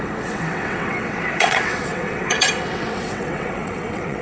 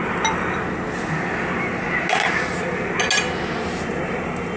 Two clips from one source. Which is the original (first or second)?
second